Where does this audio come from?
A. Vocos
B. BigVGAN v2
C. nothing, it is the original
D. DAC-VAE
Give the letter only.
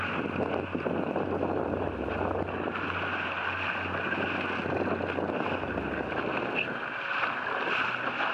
C